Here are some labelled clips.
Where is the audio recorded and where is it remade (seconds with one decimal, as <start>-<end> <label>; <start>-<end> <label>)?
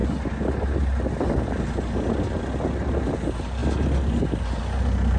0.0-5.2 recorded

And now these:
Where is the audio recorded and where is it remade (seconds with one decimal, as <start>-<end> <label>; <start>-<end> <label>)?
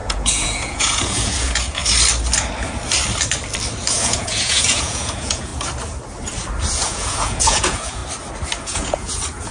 0.0-1.8 remade; 1.8-3.9 recorded; 3.9-5.5 remade; 5.5-6.7 recorded; 6.7-8.0 remade; 8.0-8.6 recorded; 8.6-9.5 remade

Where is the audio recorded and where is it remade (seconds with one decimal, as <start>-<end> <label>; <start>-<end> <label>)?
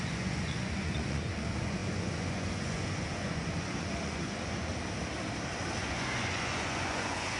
0.0-4.7 remade; 4.7-5.8 recorded; 5.8-7.4 remade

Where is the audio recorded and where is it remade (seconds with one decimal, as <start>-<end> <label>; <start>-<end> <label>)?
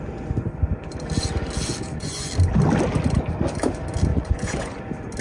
0.0-1.8 recorded; 1.8-2.3 remade; 2.3-4.1 recorded; 4.1-4.8 remade; 4.8-5.2 recorded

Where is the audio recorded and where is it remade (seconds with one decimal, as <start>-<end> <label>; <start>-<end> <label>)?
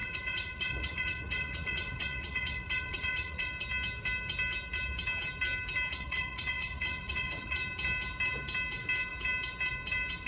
0.0-3.5 remade; 3.5-5.9 recorded; 5.9-7.6 remade; 7.6-10.3 recorded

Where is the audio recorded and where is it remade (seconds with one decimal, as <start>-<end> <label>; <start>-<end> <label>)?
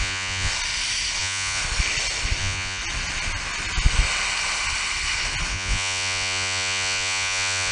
0.0-0.5 remade; 0.5-1.2 recorded; 1.2-1.6 remade; 1.6-2.4 recorded; 2.4-2.8 remade; 2.8-5.5 recorded; 5.5-7.7 remade